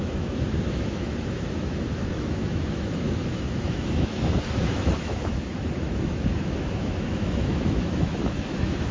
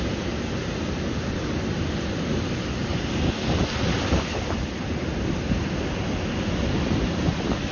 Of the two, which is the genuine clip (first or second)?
second